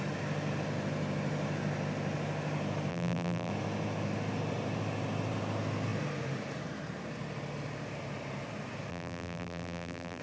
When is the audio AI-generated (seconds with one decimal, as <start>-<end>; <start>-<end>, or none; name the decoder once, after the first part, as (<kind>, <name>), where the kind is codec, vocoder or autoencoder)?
2.9-3.5 (vocoder, BigVGAN v2); 8.9-10.2